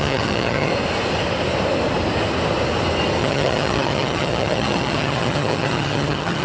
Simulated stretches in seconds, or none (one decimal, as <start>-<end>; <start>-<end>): 0.0-0.7; 3.2-6.4